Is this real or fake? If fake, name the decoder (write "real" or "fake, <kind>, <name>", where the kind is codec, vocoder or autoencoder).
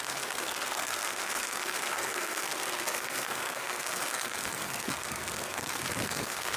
fake, codec, SNAC